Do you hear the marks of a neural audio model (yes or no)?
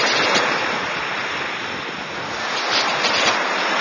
no